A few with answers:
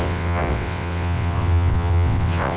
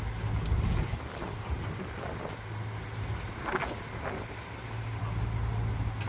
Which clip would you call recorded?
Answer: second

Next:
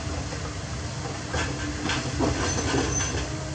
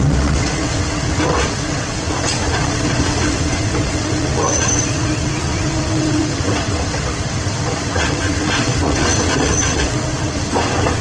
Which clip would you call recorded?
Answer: first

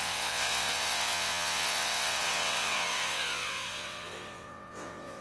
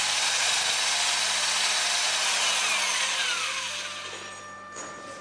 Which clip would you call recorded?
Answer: second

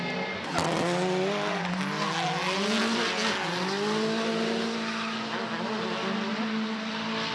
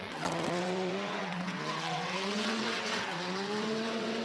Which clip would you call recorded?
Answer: first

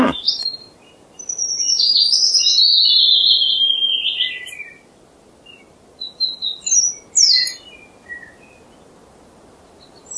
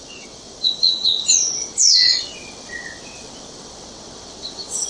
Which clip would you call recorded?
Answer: first